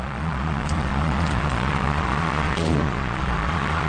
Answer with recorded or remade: remade